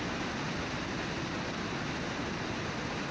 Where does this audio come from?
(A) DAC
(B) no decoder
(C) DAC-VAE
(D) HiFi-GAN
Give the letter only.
B